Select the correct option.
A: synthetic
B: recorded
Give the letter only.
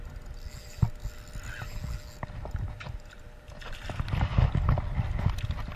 B